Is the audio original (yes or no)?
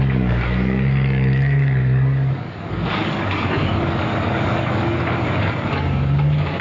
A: no